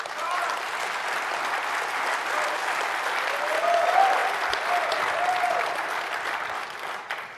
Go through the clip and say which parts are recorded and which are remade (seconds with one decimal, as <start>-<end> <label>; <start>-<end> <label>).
0.0-7.4 recorded